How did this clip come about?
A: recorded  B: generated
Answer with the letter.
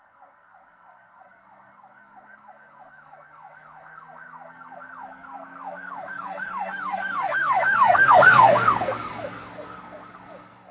B